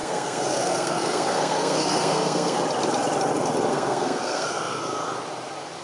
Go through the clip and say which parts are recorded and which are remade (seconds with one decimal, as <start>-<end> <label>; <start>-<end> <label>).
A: 0.0-2.6 remade; 2.6-3.7 recorded; 3.7-4.8 remade; 4.8-5.8 recorded